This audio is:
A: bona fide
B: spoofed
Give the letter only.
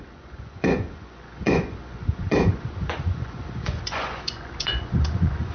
B